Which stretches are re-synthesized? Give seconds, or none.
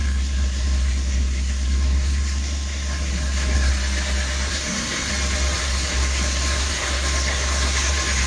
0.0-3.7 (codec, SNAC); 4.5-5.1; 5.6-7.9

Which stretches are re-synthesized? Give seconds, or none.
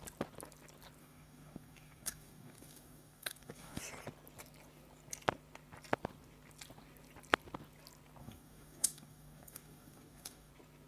1.0-3.8 (codec, DAC); 8.2-10.5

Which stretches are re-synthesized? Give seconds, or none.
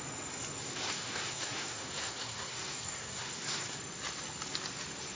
0.7-3.8 (codec, SNAC)